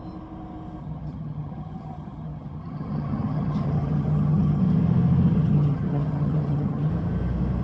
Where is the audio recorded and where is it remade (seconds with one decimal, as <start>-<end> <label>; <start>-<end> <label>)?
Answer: 0.0-0.8 recorded; 0.8-4.6 remade; 4.6-5.3 recorded; 5.3-6.9 remade; 6.9-7.6 recorded